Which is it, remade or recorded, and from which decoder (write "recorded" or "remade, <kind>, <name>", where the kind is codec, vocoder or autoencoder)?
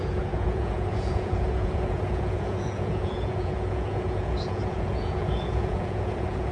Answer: remade, vocoder, Vocos